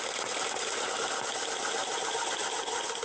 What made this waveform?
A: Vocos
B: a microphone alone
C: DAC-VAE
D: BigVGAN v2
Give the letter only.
B